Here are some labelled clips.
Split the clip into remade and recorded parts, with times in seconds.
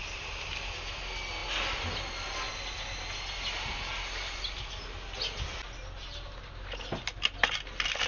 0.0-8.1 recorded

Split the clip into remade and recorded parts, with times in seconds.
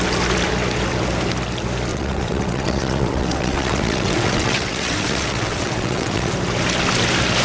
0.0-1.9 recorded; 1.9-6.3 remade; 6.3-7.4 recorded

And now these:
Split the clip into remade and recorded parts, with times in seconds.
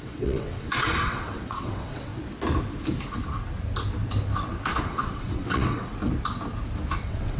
0.0-2.1 remade; 2.1-4.8 recorded; 4.8-6.0 remade; 6.0-7.0 recorded; 7.0-7.4 remade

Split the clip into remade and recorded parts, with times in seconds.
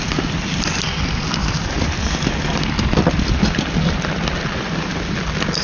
0.0-5.6 recorded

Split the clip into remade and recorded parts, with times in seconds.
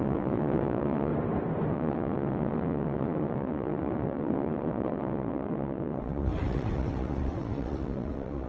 0.0-1.1 remade; 1.1-1.7 recorded; 1.7-8.5 remade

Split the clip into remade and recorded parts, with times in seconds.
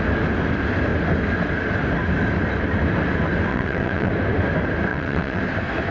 0.0-3.5 recorded; 3.5-4.1 remade; 4.1-4.9 recorded; 4.9-5.4 remade; 5.4-5.9 recorded